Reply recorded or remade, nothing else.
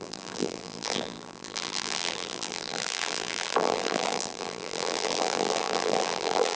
remade